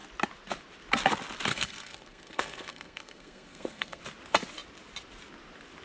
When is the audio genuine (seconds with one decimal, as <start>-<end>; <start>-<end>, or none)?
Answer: 0.0-1.5; 4.0-5.8